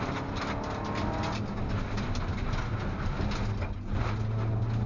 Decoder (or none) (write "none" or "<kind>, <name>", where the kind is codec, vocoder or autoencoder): none